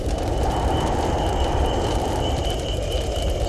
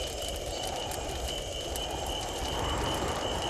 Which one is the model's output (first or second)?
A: first